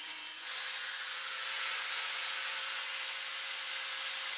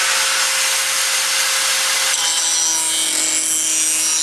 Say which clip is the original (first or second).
second